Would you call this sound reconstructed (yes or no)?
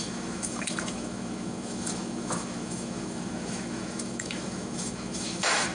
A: yes